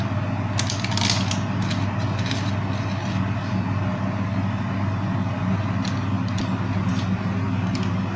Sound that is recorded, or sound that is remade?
recorded